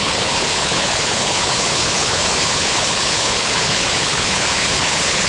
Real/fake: fake